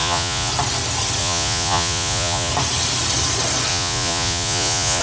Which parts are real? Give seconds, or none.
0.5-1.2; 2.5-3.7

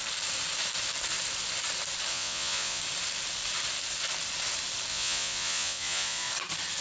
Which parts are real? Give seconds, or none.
0.0-2.1; 2.8-4.9; 6.3-6.8

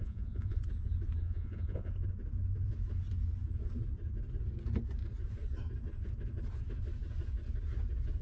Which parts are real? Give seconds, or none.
0.6-1.2; 1.9-8.2

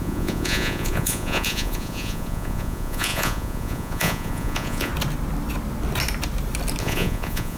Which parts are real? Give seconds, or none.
4.9-6.8

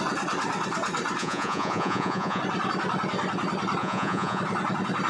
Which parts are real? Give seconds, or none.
0.0-1.2; 2.4-3.8; 4.4-5.1

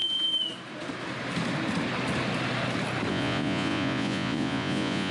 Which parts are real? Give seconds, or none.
0.0-3.1

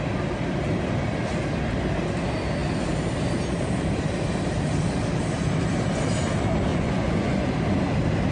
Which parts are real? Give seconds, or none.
0.0-6.7; 7.5-8.3